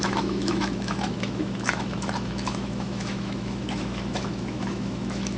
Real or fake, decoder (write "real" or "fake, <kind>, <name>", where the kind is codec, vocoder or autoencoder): fake, autoencoder, DAC-VAE